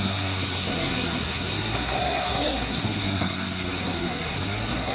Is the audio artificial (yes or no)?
yes